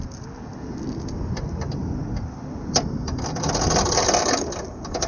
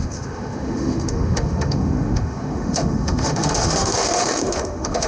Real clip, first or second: first